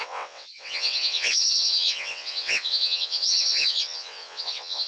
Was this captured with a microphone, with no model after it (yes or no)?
no